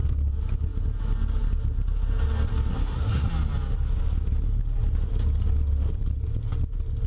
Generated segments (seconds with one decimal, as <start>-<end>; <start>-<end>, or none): 2.7-3.3